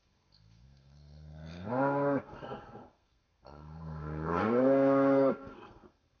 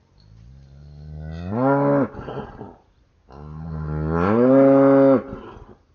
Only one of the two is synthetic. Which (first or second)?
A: first